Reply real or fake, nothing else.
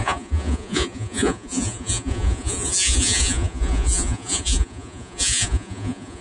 fake